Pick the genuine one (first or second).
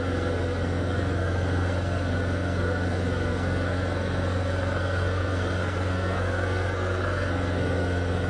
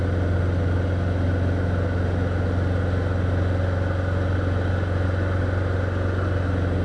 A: second